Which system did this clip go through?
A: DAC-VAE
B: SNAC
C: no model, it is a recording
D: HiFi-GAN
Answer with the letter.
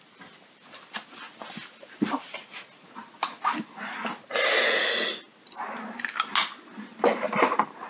C